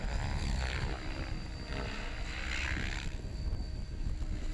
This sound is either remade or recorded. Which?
recorded